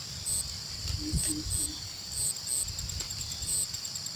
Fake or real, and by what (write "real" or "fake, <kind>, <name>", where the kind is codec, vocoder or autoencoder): real